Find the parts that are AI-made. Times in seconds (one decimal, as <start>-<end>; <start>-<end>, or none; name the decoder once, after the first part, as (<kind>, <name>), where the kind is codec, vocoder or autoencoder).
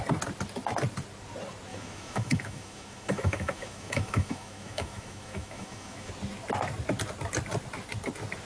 1.7-6.1 (autoencoder, DAC-VAE)